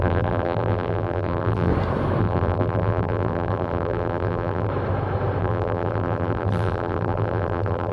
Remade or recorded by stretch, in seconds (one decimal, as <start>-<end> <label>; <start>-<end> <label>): 0.0-1.7 remade; 1.7-2.2 recorded; 2.2-4.7 remade; 4.7-5.4 recorded; 5.4-7.9 remade